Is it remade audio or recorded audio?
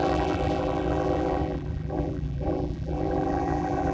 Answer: remade